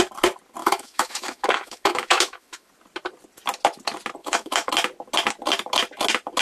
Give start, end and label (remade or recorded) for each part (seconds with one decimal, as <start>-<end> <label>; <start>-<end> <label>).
0.0-0.6 recorded; 0.6-2.7 remade; 2.7-4.2 recorded; 4.2-4.7 remade; 4.7-6.4 recorded